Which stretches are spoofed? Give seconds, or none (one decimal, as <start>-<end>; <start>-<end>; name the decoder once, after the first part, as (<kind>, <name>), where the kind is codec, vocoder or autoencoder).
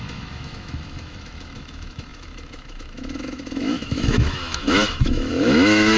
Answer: 0.0-6.0 (autoencoder, DAC-VAE)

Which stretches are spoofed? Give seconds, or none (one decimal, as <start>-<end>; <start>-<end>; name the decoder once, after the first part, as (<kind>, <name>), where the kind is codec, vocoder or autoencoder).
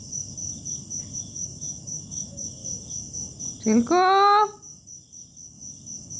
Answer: 0.0-0.4 (autoencoder, DAC-VAE); 1.2-2.6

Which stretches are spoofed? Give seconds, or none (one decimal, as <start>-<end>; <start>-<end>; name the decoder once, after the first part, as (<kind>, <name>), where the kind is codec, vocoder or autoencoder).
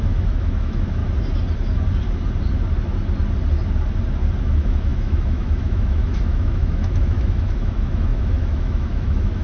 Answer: 0.0-1.0 (autoencoder, DAC-VAE); 4.4-9.4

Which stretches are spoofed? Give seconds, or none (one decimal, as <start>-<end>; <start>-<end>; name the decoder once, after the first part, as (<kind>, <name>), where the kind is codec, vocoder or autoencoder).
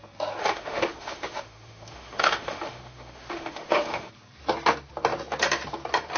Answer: 0.4-4.1 (autoencoder, DAC-VAE)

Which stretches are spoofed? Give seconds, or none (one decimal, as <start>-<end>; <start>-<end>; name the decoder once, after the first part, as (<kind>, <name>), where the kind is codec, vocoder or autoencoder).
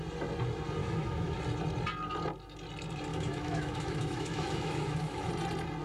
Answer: 0.8-1.4 (autoencoder, DAC-VAE); 3.1-5.3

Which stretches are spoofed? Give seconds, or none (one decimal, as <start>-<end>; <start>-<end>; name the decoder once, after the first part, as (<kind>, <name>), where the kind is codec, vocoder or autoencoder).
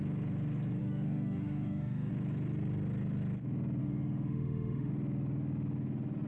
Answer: 0.8-2.1 (autoencoder, DAC-VAE); 3.8-4.9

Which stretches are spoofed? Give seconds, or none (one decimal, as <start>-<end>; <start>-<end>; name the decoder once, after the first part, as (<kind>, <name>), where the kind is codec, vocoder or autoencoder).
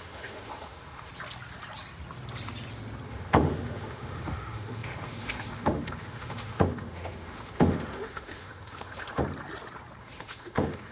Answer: 0.0-1.1 (autoencoder, DAC-VAE); 3.1-9.2; 10.0-10.9